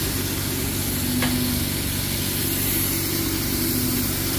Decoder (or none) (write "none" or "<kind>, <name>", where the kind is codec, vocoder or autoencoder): none